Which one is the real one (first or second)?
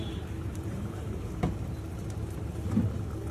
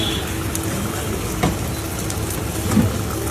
second